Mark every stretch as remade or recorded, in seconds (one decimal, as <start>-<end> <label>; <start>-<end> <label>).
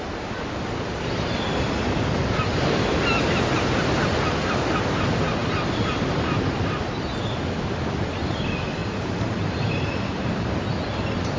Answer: 0.0-8.8 recorded; 8.8-10.5 remade; 10.5-11.4 recorded